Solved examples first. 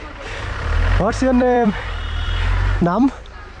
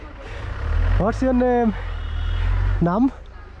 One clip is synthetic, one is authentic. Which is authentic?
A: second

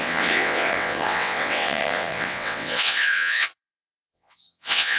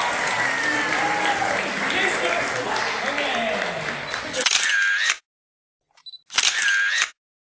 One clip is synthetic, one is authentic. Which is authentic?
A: second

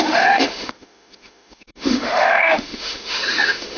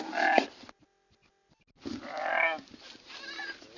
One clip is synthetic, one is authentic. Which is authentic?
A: second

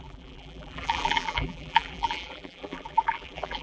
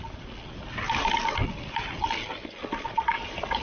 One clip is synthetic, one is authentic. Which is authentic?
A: second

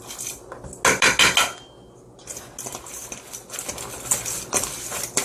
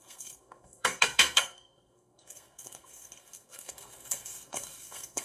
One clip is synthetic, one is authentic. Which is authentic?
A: first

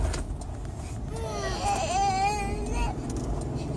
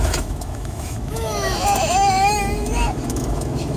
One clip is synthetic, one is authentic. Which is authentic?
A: first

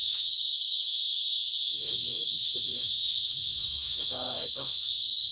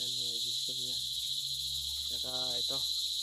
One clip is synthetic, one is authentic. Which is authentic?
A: second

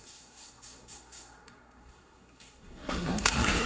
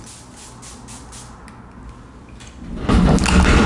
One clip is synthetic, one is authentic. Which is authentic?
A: second